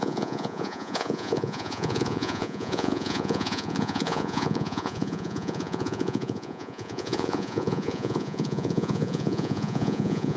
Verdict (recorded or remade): remade